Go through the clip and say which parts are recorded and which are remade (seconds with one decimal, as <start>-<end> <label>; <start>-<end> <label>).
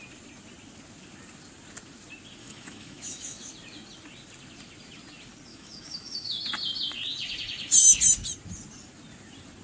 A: 0.0-2.4 recorded; 2.4-3.5 remade; 3.5-5.5 recorded; 5.5-6.4 remade; 6.4-9.6 recorded